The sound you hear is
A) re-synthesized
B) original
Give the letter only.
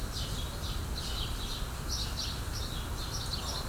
B